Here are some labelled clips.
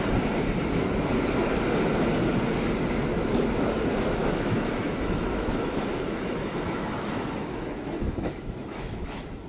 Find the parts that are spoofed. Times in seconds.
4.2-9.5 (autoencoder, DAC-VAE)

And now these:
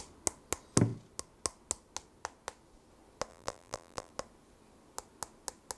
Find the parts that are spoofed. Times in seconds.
3.3-4.1 (vocoder, BigVGAN v2)

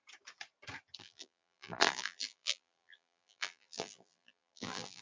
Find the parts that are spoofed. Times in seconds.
1.0-5.0 (vocoder, BigVGAN v2)

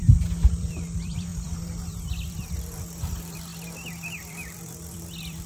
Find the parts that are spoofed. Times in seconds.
0.0-3.5 (vocoder, BigVGAN v2); 4.2-5.5

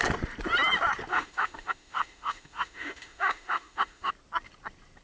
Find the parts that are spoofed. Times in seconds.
1.1-4.1 (autoencoder, DAC-VAE)

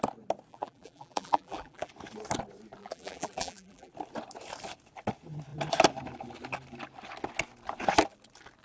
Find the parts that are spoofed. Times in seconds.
0.5-1.9 (vocoder, BigVGAN v2); 2.8-3.9